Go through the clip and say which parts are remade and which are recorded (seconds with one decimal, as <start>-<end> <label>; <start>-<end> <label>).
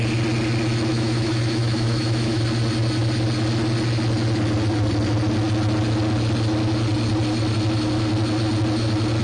0.0-0.9 recorded; 0.9-2.4 remade; 2.4-9.2 recorded